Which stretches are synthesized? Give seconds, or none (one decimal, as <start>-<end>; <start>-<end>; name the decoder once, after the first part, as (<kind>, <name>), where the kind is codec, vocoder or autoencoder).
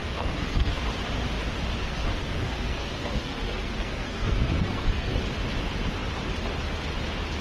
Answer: 0.0-0.8 (codec, SNAC); 1.8-5.2